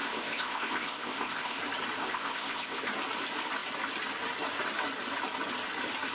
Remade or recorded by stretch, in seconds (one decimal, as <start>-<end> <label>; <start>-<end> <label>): 0.0-1.6 remade; 1.6-2.0 recorded; 2.0-2.9 remade; 2.9-6.1 recorded